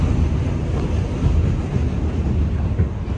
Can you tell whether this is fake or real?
real